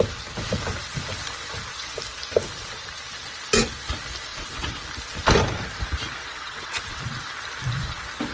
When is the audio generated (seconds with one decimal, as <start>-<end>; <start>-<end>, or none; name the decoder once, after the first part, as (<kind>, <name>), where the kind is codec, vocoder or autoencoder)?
4.3-4.8 (vocoder, WaveNeXt); 6.2-7.0